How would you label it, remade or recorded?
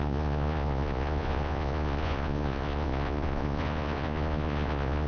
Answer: remade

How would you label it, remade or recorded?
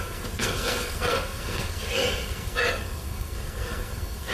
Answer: remade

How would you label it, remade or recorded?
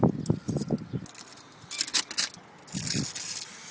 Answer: recorded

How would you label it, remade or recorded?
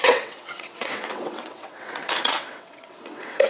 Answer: remade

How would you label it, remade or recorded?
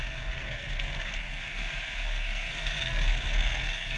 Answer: remade